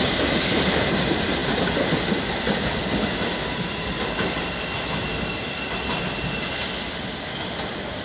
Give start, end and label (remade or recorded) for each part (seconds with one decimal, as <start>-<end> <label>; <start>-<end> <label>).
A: 0.0-8.0 recorded